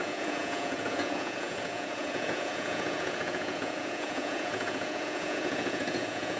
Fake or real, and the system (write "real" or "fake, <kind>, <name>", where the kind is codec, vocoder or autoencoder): fake, vocoder, Vocos